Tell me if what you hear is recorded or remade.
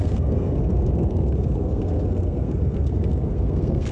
remade